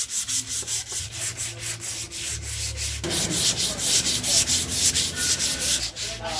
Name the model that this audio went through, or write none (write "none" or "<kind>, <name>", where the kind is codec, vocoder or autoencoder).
none